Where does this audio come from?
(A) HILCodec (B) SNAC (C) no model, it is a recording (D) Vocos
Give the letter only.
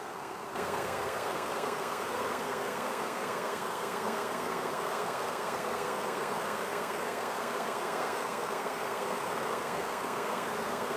B